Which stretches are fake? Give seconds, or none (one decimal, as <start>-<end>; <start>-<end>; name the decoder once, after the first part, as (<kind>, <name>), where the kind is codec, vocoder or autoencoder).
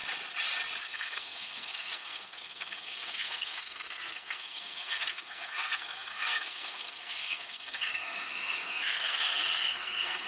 0.8-10.3 (codec, SNAC)